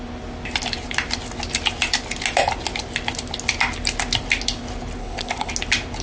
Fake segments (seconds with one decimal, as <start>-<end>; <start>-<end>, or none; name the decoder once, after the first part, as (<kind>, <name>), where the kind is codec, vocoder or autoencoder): 5.0-5.5 (codec, HILCodec)